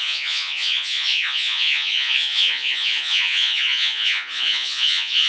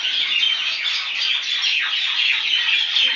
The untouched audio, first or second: second